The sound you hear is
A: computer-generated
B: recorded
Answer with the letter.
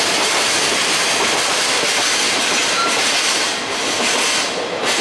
B